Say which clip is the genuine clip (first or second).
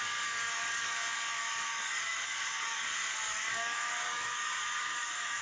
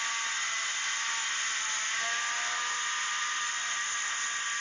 second